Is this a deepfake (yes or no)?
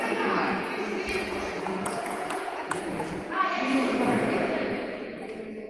yes